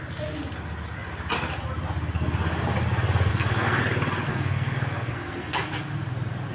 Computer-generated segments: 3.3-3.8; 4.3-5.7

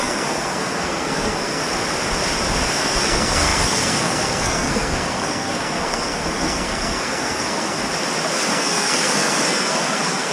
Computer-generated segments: 0.0-1.6; 2.7-7.8; 8.3-10.3

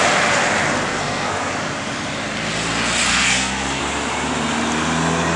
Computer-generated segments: 0.9-1.5; 3.1-3.8

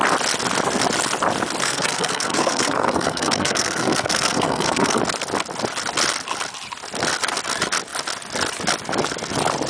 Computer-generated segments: 1.6-5.0